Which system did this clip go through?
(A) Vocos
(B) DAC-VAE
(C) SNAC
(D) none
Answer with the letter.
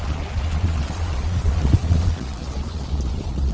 A